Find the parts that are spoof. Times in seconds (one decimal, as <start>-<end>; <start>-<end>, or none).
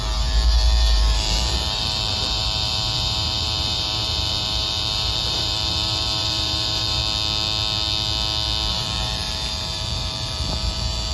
0.0-7.0; 8.7-11.1